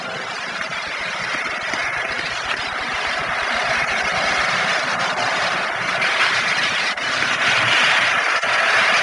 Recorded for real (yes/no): no